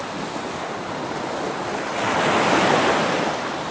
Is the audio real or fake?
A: real